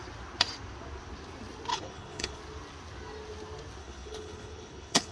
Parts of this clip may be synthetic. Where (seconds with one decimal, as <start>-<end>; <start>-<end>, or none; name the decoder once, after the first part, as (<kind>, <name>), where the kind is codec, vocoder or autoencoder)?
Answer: 1.7-2.4 (codec, HILCodec); 3.8-5.1